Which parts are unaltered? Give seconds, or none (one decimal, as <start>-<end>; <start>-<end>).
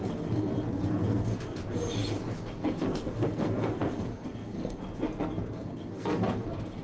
1.6-2.6